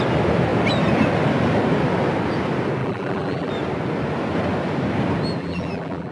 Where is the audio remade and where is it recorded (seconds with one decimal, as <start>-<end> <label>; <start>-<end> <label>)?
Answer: 0.0-2.8 recorded; 2.8-3.5 remade; 3.5-5.4 recorded; 5.4-6.1 remade